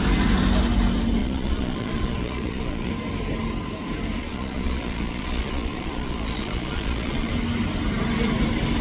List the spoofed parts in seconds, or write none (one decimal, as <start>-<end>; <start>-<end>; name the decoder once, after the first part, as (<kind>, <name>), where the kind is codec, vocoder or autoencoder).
1.2-2.9 (vocoder, Vocos); 4.2-7.3